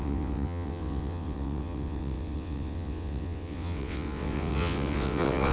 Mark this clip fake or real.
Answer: fake